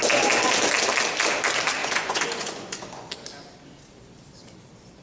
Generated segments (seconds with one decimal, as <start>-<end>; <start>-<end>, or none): 1.8-3.1

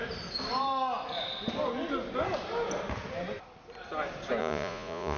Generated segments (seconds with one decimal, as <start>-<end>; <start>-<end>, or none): 4.4-5.2

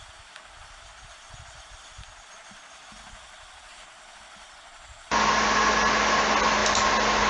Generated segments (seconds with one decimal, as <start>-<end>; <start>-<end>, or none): none